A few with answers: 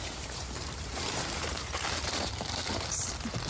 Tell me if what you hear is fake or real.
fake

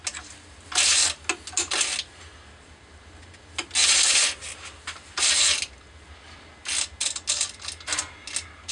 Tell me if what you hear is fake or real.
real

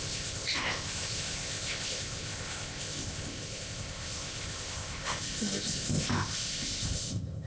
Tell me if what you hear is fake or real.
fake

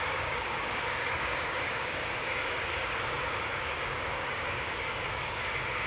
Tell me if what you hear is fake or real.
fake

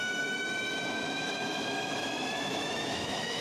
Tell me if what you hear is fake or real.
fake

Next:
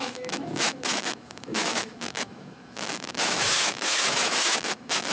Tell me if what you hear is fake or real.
fake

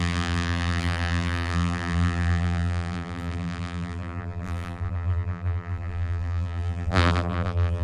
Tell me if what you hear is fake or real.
fake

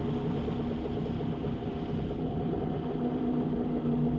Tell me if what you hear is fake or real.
real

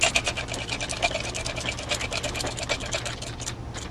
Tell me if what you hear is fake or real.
real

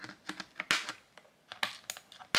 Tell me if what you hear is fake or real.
real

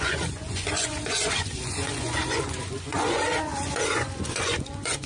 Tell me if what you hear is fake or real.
fake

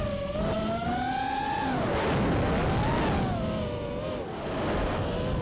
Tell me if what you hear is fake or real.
real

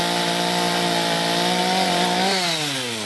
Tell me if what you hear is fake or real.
real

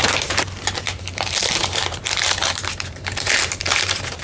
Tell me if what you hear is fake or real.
fake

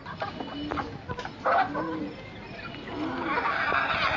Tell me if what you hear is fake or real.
real